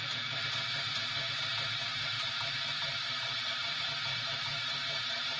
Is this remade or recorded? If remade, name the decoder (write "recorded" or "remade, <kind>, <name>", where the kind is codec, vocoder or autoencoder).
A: remade, vocoder, BigVGAN v2